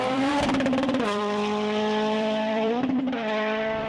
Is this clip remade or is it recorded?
remade